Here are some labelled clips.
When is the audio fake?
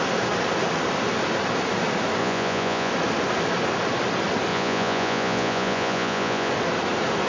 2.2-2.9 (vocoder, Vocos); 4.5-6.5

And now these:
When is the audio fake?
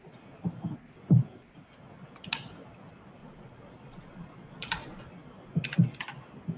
3.2-5.0 (vocoder, Vocos)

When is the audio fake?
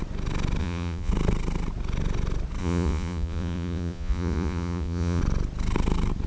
0.6-1.1 (vocoder, Vocos); 2.6-5.2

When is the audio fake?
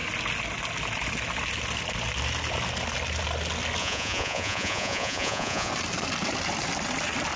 3.8-5.7 (vocoder, Vocos)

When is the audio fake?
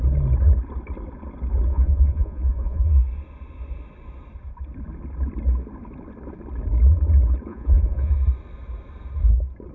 1.7-2.9 (vocoder, Vocos); 7.5-8.1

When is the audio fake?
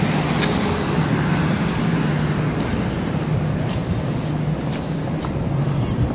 none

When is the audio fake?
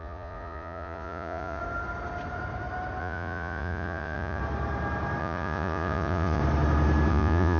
0.0-1.6 (vocoder, Vocos); 3.0-4.4; 5.2-6.4; 7.1-7.6